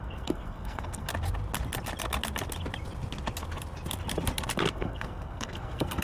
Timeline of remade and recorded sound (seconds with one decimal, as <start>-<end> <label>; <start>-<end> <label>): 0.0-1.1 remade; 1.1-4.7 recorded; 4.7-6.0 remade